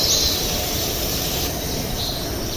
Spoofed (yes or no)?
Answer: yes